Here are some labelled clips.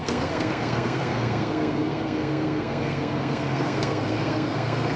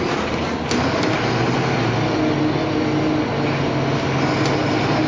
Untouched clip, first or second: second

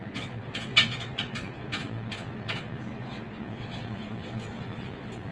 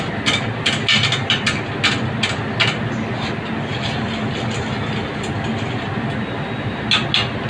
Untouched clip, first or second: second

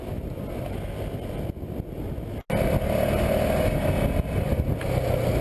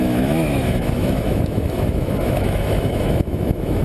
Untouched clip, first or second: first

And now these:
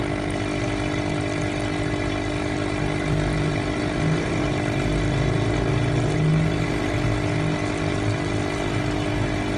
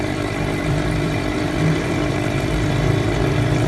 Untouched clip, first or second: first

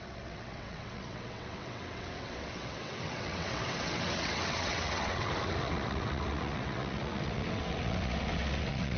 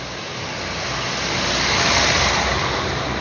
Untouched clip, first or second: second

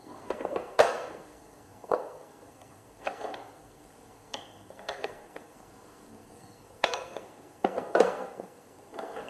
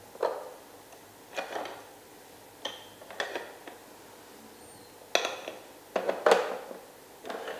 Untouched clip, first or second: second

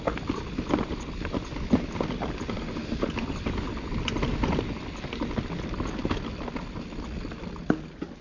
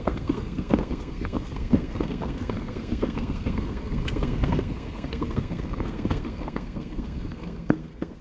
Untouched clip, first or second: first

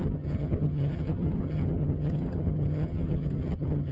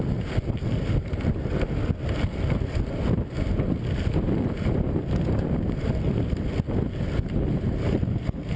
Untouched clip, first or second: second